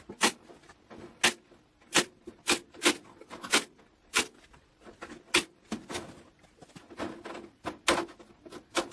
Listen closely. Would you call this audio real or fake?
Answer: real